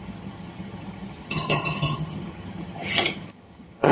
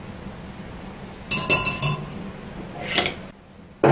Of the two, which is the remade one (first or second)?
first